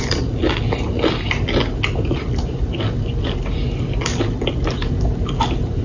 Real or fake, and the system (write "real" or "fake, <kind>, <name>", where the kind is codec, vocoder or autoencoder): real